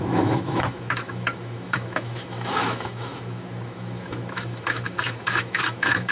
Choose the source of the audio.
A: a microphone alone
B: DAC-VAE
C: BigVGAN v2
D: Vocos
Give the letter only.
B